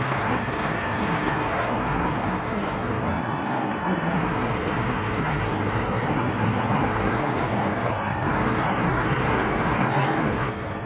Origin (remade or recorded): remade